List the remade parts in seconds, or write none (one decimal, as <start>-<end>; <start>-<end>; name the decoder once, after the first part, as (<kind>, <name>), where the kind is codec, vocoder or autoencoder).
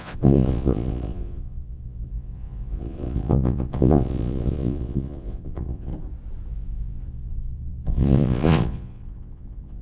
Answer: 0.0-5.9 (vocoder, Vocos); 6.5-9.8